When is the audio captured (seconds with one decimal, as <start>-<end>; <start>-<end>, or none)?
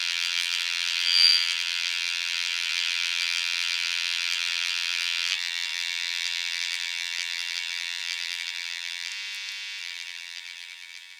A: 9.1-9.8